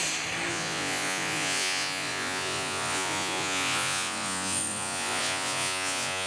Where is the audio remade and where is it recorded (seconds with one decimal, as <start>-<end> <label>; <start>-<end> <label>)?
0.0-0.5 recorded; 0.5-6.3 remade